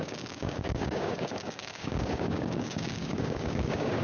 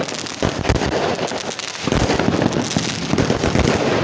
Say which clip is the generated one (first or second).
first